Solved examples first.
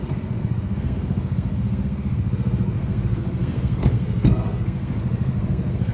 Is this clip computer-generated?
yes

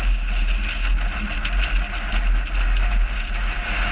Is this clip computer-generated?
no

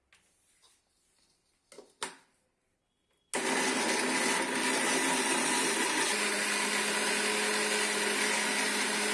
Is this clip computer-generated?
no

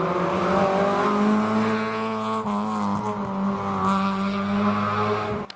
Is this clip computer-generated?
no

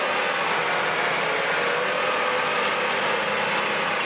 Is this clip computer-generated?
no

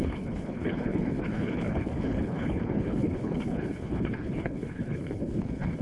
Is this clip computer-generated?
yes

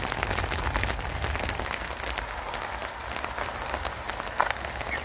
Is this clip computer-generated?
no